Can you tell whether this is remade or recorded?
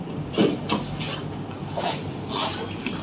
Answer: recorded